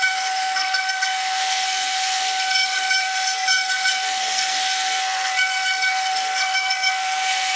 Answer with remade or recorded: remade